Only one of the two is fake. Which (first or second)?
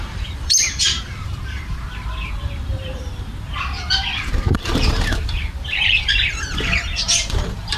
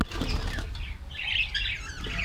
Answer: first